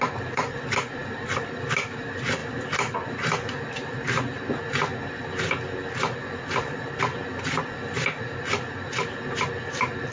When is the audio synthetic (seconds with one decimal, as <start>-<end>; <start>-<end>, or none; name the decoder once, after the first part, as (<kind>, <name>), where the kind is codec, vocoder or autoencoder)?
none